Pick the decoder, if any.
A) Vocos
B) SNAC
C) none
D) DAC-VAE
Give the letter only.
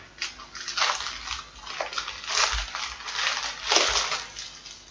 C